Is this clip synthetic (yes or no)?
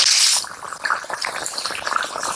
yes